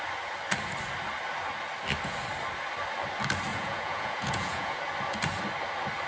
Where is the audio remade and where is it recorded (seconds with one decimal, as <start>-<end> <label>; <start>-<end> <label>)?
0.0-3.5 recorded; 3.5-4.8 remade; 4.8-6.1 recorded